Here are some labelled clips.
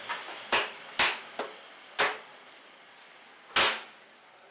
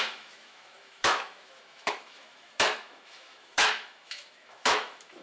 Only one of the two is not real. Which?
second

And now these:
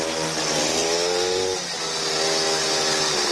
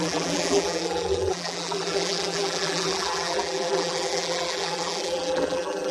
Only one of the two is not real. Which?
second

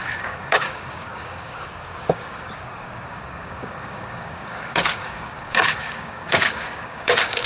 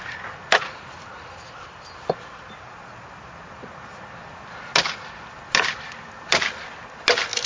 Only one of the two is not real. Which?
first